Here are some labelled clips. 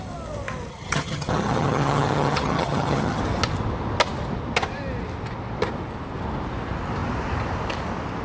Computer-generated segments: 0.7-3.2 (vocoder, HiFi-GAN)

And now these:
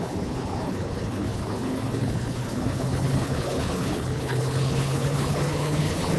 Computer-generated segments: 0.0-6.2 (codec, HILCodec)

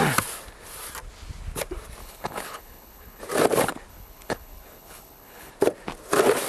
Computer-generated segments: 2.0-3.2 (codec, HILCodec); 3.9-5.5

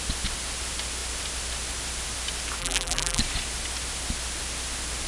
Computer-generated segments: 2.6-3.2 (vocoder, BigVGAN v2)